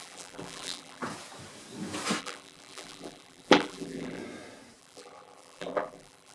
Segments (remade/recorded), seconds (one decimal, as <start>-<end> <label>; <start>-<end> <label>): 0.0-1.0 remade; 1.0-2.2 recorded; 2.2-4.2 remade; 4.2-4.8 recorded; 4.8-6.3 remade